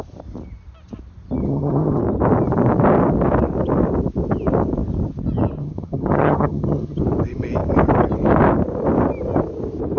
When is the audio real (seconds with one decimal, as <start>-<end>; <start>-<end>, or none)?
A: 0.0-1.4; 2.0-5.6; 7.0-10.0